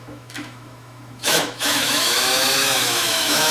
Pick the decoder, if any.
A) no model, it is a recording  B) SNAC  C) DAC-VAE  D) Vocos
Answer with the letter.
C